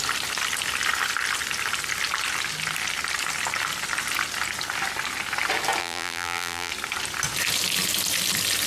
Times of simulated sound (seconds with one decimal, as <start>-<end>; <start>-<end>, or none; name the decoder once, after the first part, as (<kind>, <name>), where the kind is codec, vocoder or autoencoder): 5.8-6.7 (vocoder, BigVGAN v2)